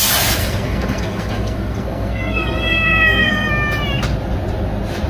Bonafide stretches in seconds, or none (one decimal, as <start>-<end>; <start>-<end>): 0.0-0.4; 3.5-5.1